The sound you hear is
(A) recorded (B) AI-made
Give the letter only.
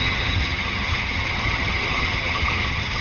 B